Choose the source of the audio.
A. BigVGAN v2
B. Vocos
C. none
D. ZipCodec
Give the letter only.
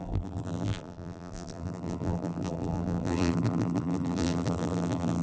A